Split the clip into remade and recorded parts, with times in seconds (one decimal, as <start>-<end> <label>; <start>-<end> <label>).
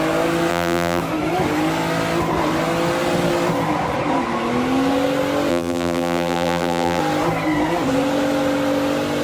0.0-0.5 recorded; 0.5-1.0 remade; 1.0-5.5 recorded; 5.5-7.0 remade; 7.0-9.2 recorded